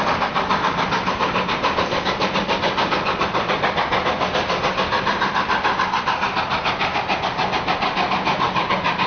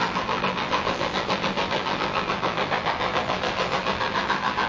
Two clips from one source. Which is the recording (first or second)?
first